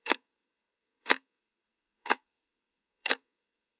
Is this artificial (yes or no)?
yes